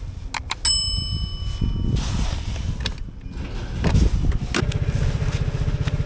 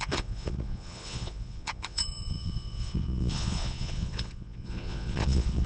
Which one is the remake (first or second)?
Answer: second